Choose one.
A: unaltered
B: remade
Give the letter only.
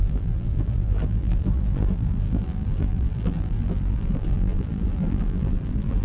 B